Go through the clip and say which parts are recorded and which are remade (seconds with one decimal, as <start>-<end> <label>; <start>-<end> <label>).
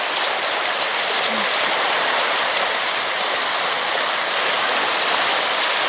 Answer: 0.0-5.9 recorded